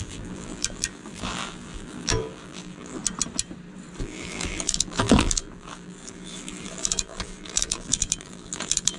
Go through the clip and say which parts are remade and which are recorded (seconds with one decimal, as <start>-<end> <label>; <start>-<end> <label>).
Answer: 0.0-3.0 remade; 3.0-4.0 recorded; 4.0-9.0 remade